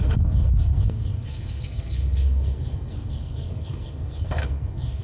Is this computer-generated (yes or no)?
yes